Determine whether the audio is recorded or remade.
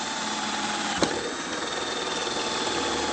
recorded